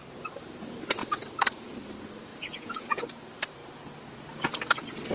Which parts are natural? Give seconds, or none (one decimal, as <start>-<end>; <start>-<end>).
0.0-2.3; 3.0-5.1